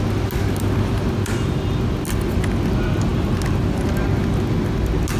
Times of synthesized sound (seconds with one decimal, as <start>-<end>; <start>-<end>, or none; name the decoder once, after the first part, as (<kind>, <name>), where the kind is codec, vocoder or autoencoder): none